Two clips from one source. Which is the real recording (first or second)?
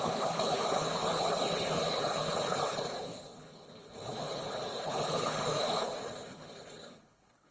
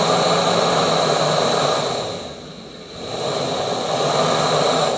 second